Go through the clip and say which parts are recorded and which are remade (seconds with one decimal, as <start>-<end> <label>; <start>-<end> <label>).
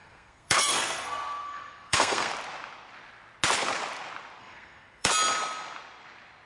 0.0-2.3 remade; 2.3-4.4 recorded; 4.4-5.1 remade; 5.1-6.5 recorded